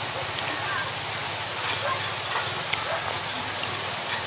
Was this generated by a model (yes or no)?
no